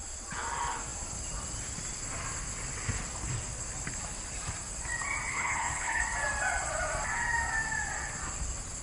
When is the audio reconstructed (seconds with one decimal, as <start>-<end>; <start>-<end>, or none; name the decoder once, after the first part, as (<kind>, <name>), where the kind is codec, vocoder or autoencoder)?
5.3-6.0 (codec, HILCodec)